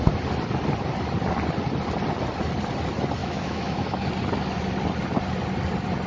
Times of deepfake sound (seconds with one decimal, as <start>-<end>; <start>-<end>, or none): 3.2-4.1